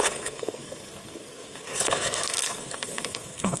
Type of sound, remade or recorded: remade